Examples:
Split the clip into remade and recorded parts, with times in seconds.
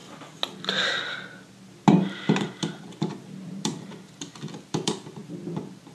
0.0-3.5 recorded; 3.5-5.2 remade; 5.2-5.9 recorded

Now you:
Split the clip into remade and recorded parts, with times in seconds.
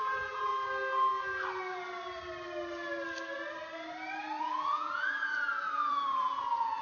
0.0-0.5 remade; 0.5-4.4 recorded; 4.4-6.8 remade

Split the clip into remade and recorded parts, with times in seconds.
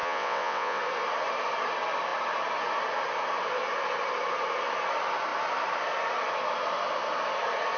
0.0-0.8 remade; 0.8-7.8 recorded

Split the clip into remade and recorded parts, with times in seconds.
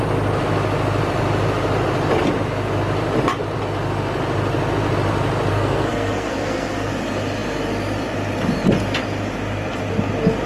0.0-5.5 recorded; 5.5-6.9 remade; 6.9-10.5 recorded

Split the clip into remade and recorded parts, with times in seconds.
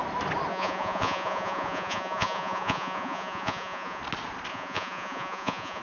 0.0-0.5 recorded; 0.5-4.0 remade; 4.0-4.5 recorded; 4.5-5.8 remade